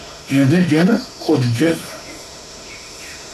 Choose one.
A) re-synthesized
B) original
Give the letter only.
A